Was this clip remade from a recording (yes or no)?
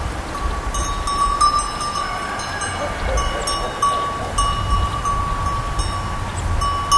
no